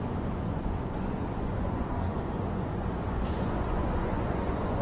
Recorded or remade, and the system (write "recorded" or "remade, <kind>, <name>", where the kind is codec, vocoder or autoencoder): remade, vocoder, Vocos